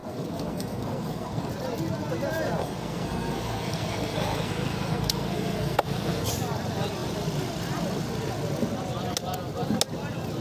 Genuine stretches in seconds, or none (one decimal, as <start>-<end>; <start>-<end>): 1.5-2.6; 6.3-10.4